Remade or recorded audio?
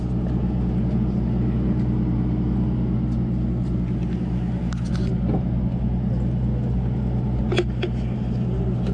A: recorded